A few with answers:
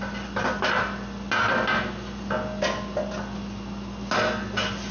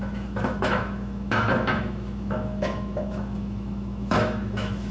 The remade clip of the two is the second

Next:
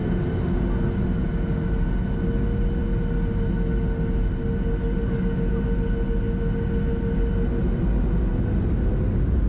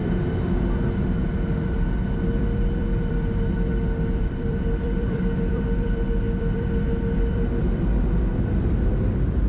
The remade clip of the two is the second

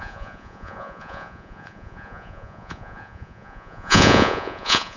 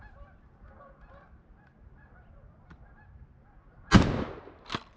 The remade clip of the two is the first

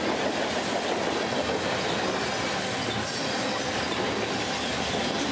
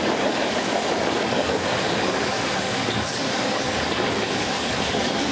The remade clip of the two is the second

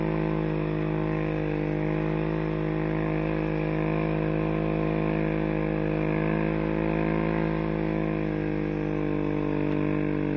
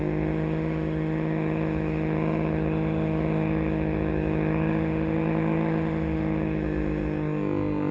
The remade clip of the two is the second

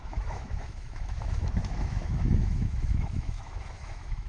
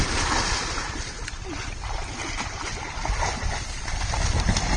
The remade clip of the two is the first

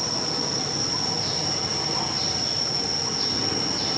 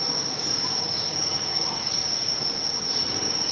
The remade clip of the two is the second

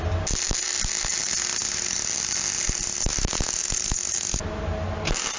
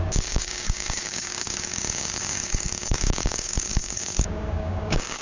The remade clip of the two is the second